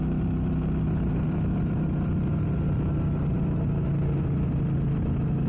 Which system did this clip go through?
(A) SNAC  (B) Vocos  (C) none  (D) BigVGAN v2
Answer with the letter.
C